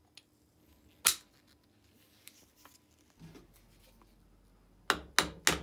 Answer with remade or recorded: recorded